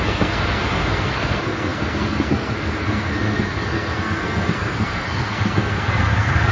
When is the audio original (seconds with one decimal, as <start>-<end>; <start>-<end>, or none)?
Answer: none